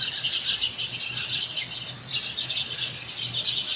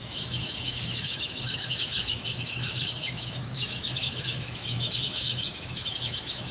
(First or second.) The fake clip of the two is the second